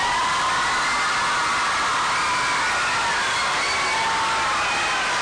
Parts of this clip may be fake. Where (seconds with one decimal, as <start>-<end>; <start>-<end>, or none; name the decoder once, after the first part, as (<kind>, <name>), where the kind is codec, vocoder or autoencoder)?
none